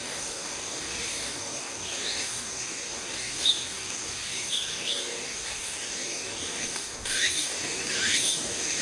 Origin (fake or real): fake